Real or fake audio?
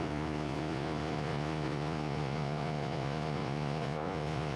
fake